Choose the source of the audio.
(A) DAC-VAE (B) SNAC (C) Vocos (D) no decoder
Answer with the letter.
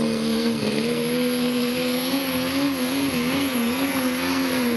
B